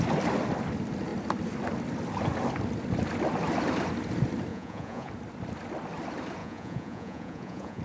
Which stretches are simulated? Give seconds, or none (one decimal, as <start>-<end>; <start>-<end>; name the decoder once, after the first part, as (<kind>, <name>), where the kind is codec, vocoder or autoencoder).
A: 4.5-5.1 (vocoder, Vocos); 6.4-7.8

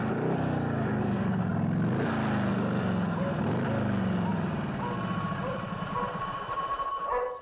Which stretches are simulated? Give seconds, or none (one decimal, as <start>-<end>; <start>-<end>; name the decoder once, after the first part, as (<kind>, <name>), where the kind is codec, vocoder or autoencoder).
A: none

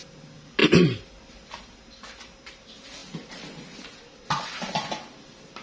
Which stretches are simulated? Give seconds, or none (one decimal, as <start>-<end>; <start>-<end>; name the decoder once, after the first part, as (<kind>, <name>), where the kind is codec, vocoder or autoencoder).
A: none

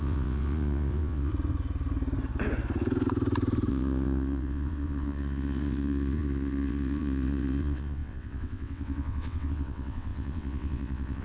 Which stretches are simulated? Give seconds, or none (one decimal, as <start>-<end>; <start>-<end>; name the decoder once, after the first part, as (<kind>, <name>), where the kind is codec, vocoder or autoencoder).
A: 0.0-1.3 (vocoder, WaveNeXt); 3.7-11.2